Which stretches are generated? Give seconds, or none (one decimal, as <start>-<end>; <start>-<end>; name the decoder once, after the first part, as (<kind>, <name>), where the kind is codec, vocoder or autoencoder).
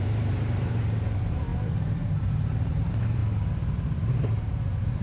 0.0-3.2 (vocoder, BigVGAN v2); 4.1-5.0